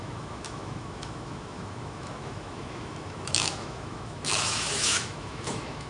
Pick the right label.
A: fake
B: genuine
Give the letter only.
A